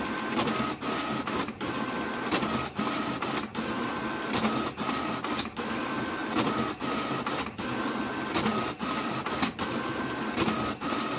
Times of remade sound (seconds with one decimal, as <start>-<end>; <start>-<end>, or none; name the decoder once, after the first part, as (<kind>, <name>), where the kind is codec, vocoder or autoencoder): none